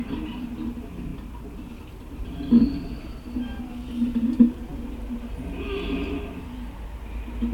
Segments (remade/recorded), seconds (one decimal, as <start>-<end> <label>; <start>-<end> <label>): 0.0-7.5 recorded